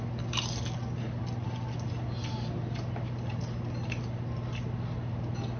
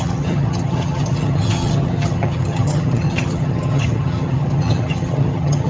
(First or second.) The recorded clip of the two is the first